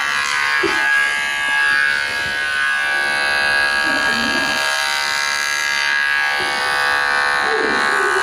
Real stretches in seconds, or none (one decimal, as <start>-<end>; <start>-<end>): 0.0-8.2